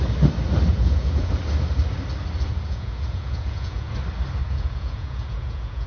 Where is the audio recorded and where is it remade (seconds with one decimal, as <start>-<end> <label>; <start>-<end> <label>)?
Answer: 0.0-0.7 recorded; 0.7-1.3 remade; 1.3-2.5 recorded; 2.5-3.9 remade; 3.9-4.4 recorded; 4.4-5.9 remade